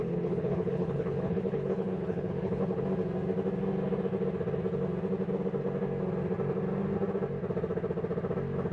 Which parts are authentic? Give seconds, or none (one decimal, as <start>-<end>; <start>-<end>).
2.8-8.7